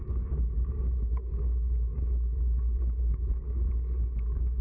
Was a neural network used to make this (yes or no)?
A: yes